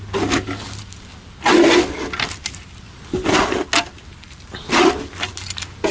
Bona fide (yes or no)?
yes